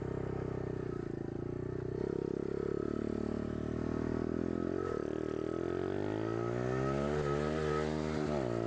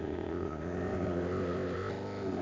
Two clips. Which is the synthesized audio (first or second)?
second